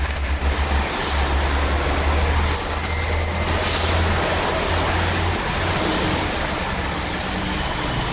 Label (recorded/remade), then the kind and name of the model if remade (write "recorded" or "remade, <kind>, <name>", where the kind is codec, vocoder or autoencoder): recorded